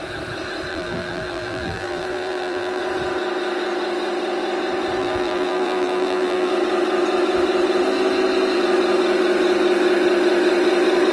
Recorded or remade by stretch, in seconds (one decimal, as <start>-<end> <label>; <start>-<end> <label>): 0.0-0.7 recorded; 0.7-2.8 remade; 2.8-5.0 recorded; 5.0-6.5 remade; 6.5-11.1 recorded